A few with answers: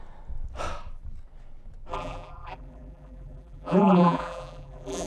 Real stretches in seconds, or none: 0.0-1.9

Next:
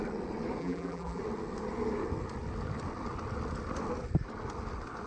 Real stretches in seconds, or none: 0.0-0.6; 1.2-5.1

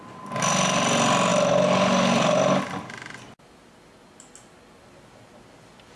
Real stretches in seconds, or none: 0.0-6.0